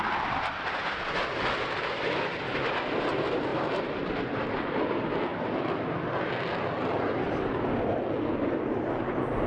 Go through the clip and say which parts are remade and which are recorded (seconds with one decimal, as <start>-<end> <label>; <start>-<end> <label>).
0.0-9.5 recorded